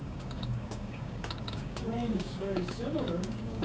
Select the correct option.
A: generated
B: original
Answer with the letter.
A